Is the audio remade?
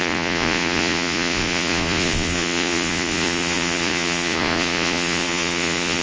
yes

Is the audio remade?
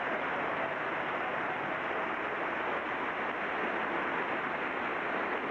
no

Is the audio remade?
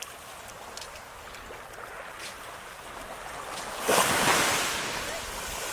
no